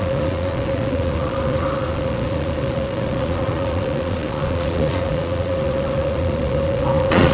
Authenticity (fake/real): fake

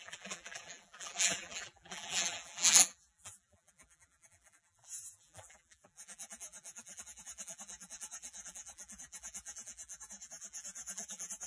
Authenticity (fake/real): fake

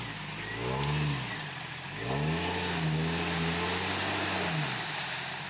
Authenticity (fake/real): real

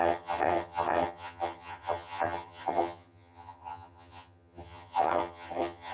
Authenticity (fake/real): fake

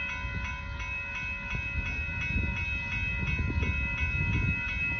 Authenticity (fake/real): real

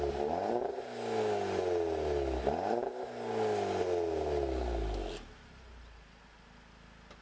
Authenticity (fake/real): real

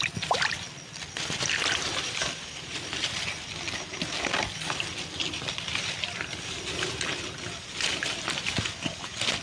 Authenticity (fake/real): real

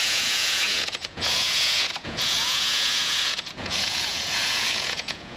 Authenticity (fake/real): fake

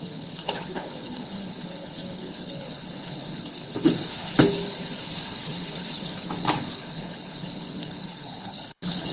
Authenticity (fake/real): fake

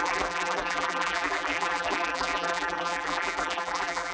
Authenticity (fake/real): fake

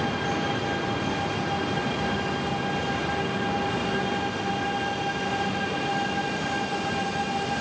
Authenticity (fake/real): real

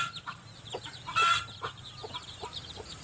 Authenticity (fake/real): fake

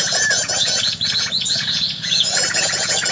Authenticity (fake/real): fake